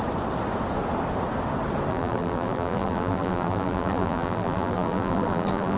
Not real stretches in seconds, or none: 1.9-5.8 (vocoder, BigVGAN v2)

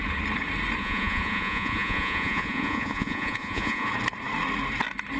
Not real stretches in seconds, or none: 0.8-3.9 (vocoder, Vocos)

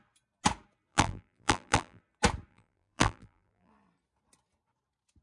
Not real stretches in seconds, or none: 0.9-2.0 (vocoder, BigVGAN v2); 2.5-3.7

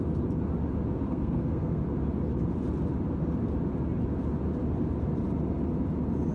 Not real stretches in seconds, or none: 1.0-1.8 (codec, SNAC)

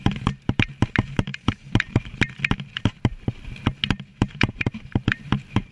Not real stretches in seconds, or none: 1.3-2.2 (vocoder, BigVGAN v2); 4.1-5.7